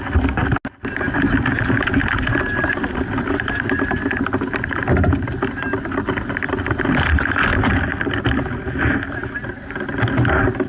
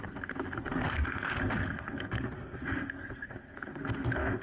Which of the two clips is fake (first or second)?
second